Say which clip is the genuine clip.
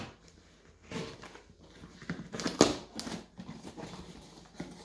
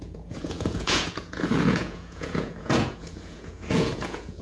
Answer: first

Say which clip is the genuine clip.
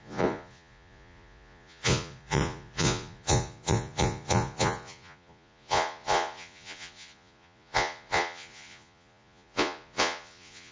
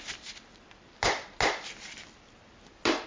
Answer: second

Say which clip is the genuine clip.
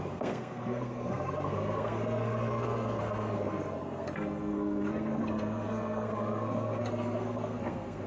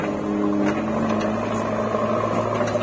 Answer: second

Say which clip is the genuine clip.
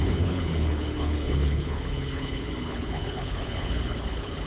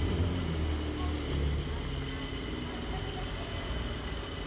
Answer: second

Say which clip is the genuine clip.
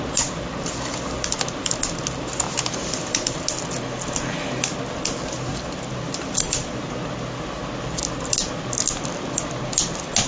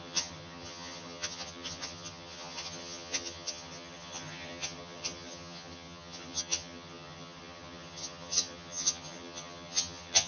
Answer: first